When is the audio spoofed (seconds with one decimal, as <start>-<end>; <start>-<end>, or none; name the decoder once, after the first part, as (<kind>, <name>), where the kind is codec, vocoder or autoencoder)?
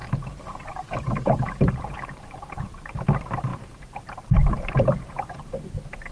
0.0-6.1 (vocoder, BigVGAN v2)